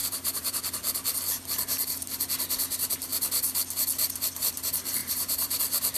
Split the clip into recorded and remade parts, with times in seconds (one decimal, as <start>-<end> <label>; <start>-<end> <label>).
0.0-0.6 remade; 0.6-5.0 recorded; 5.0-5.6 remade; 5.6-6.0 recorded